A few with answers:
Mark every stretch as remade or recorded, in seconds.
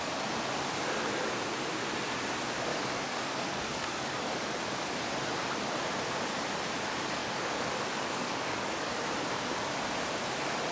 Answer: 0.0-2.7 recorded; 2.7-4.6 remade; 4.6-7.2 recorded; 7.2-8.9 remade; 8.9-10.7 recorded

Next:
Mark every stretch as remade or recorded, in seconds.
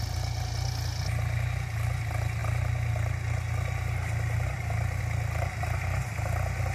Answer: 0.0-6.7 recorded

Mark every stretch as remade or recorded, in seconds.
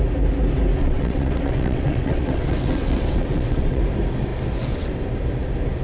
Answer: 0.0-0.8 recorded; 0.8-3.8 remade; 3.8-5.8 recorded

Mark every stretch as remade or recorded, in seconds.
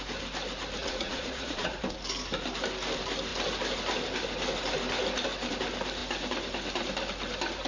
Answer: 0.0-0.8 recorded; 0.8-1.8 remade; 1.8-7.7 recorded